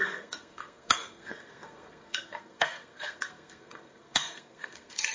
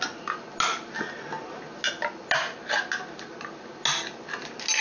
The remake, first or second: first